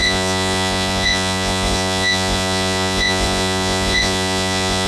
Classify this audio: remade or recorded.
remade